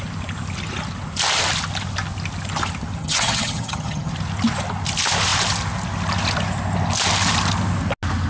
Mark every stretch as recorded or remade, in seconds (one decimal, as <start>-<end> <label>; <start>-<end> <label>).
0.0-3.0 recorded; 3.0-4.1 remade; 4.1-8.3 recorded